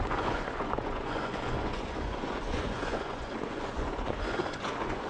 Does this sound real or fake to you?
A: fake